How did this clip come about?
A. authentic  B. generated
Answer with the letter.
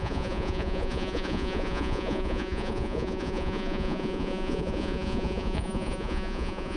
B